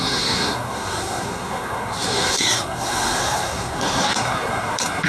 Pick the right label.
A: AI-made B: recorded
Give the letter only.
A